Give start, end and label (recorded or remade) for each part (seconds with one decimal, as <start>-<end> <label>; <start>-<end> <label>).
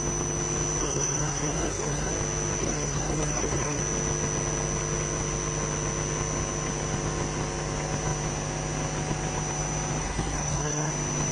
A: 0.0-0.8 recorded; 0.8-2.1 remade; 2.1-2.6 recorded; 2.6-3.8 remade; 3.8-10.0 recorded; 10.0-10.9 remade; 10.9-11.3 recorded